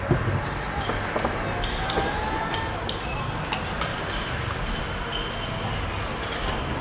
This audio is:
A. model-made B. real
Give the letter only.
B